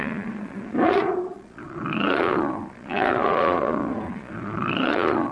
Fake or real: fake